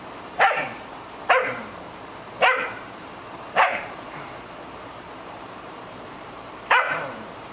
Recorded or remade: remade